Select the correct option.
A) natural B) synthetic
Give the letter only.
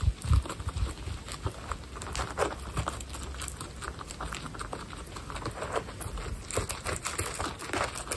A